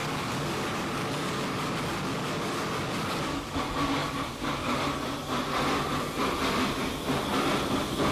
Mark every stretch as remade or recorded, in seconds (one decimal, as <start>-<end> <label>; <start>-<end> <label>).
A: 0.0-3.6 remade; 3.6-4.0 recorded; 4.0-4.8 remade; 4.8-8.1 recorded